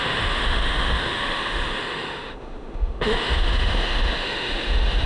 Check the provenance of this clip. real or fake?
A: fake